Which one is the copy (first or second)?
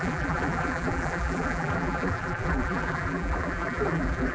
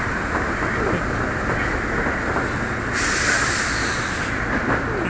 first